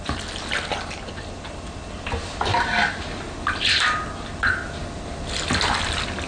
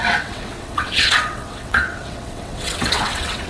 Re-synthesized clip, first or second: second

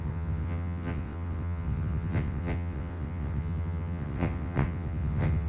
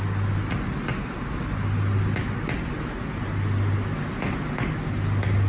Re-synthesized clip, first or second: first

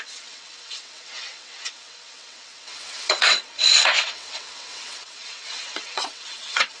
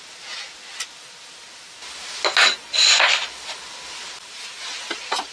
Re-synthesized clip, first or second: first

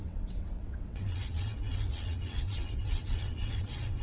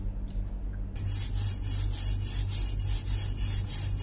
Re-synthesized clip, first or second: first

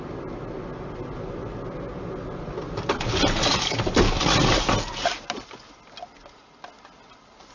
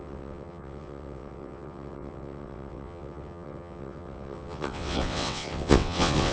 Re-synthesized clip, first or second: second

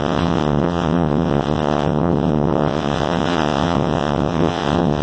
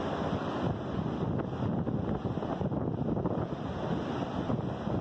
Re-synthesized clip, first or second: first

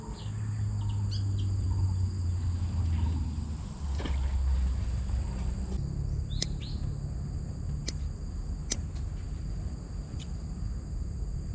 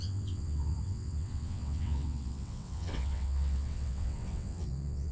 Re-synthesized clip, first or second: second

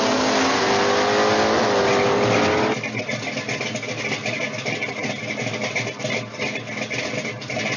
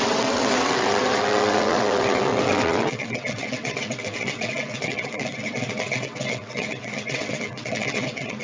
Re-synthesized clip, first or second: second